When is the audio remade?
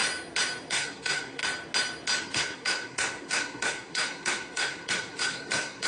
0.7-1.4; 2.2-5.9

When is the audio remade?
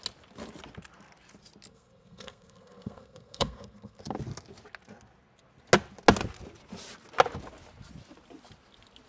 1.7-4.0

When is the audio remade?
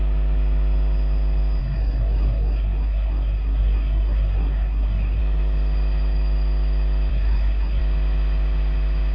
1.6-5.2; 7.1-7.8